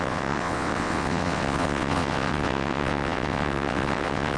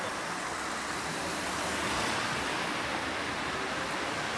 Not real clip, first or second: first